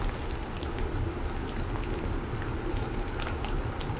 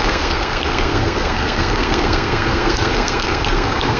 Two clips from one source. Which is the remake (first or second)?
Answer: second